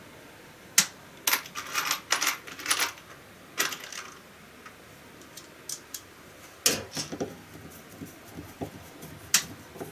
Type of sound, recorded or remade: recorded